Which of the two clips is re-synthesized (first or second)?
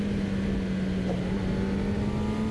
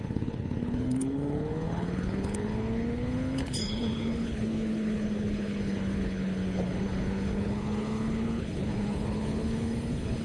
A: second